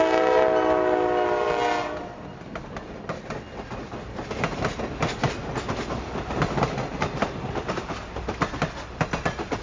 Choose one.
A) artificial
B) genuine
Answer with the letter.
B